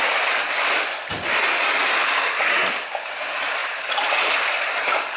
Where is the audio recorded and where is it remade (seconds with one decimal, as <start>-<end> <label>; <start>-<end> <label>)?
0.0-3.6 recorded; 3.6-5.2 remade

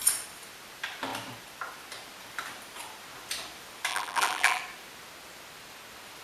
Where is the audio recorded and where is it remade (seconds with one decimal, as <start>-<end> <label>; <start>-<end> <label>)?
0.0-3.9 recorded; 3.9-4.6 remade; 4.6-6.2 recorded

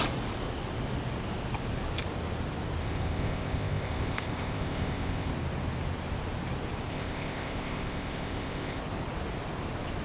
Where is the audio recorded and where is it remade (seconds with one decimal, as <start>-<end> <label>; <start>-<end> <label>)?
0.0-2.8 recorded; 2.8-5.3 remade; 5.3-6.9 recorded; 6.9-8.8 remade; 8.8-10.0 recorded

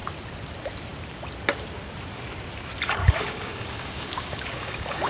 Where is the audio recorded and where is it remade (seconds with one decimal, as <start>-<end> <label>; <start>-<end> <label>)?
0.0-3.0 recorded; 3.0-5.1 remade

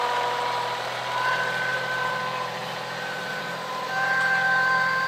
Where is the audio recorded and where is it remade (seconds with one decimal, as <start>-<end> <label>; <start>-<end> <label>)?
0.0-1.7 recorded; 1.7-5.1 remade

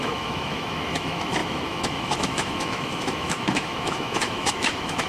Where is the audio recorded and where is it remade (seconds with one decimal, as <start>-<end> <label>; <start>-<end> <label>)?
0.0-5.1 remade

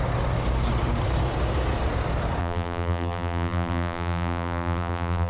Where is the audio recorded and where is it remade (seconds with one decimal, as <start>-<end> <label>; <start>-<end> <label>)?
0.0-2.4 recorded; 2.4-5.3 remade

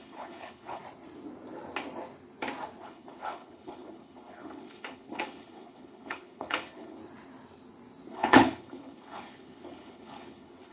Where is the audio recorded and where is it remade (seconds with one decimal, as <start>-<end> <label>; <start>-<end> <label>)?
0.0-0.8 remade; 0.8-2.8 recorded; 2.8-7.0 remade; 7.0-8.1 recorded; 8.1-10.7 remade